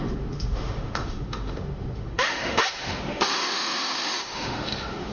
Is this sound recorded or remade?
remade